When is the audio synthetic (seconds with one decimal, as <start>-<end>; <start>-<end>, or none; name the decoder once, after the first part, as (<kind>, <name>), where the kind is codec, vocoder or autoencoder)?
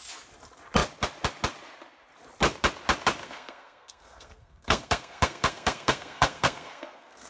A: 3.2-7.3 (codec, SNAC)